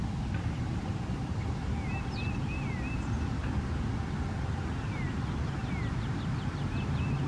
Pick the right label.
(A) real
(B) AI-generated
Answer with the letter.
A